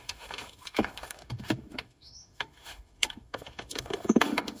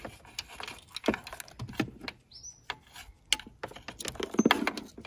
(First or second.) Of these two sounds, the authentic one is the second